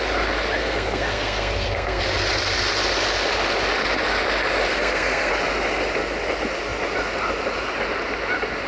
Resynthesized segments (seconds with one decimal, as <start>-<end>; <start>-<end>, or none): 0.6-2.0; 4.7-5.3